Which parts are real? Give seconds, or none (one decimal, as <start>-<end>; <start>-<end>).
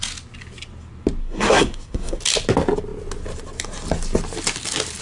0.0-1.2; 2.2-5.0